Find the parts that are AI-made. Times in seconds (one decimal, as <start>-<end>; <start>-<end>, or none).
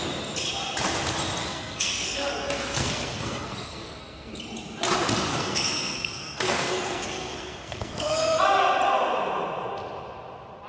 1.4-4.3; 5.3-8.4